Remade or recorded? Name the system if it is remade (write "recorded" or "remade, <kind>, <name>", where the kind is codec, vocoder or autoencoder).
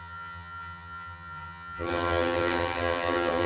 remade, vocoder, HiFi-GAN